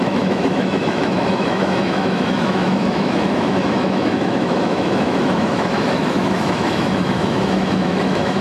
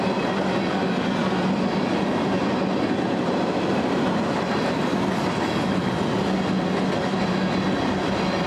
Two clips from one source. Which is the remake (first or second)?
first